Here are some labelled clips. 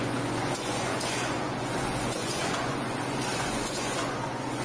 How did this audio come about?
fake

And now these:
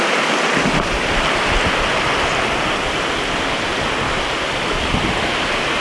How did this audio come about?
real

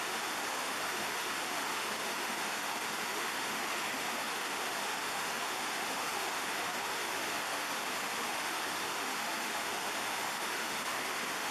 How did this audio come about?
fake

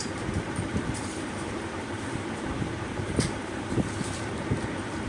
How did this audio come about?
fake